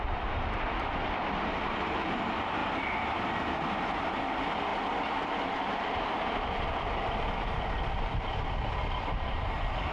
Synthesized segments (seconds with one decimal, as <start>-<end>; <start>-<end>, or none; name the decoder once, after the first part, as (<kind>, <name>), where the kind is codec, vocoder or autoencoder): none